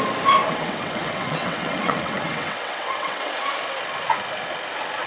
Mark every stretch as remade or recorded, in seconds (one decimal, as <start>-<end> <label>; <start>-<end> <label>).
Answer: 0.0-0.4 recorded; 0.4-3.3 remade; 3.3-5.1 recorded